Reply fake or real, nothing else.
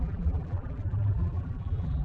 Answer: fake